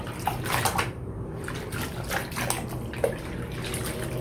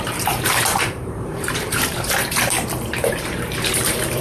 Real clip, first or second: first